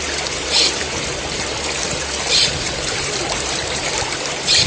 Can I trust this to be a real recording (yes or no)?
no